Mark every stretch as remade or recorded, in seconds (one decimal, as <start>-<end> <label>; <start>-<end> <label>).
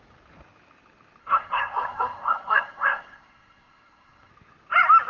0.0-1.2 recorded; 1.2-4.3 remade; 4.3-5.1 recorded